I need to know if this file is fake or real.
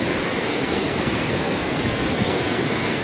fake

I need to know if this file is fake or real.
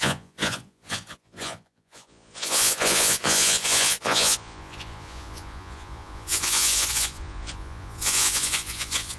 fake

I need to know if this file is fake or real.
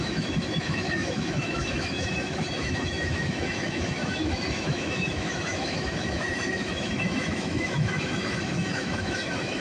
fake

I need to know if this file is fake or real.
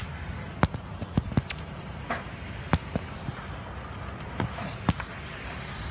real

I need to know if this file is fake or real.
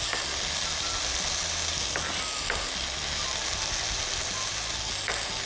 real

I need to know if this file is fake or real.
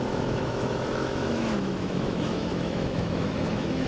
fake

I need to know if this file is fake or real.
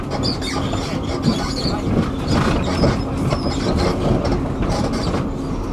real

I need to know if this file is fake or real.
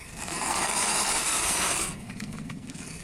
fake